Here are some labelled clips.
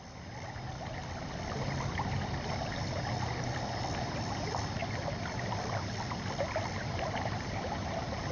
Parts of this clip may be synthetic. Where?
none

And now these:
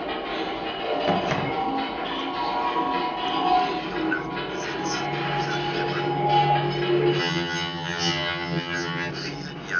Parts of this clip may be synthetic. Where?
7.2-9.1

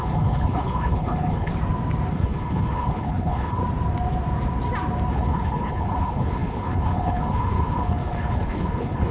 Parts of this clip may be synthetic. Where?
0.0-1.5; 2.1-3.6; 5.1-9.1

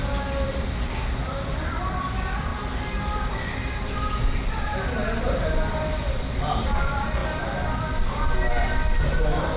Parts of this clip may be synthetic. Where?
none

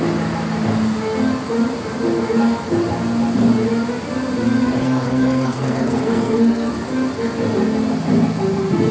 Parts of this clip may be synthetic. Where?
4.8-6.7

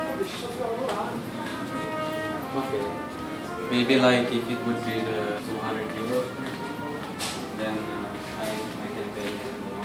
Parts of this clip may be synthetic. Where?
0.0-1.5; 5.4-7.1; 8.6-9.8

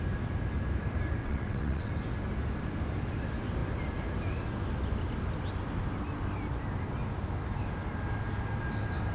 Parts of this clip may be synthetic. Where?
1.2-1.9

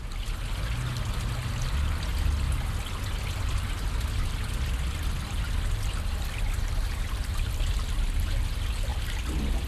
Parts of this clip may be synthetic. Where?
none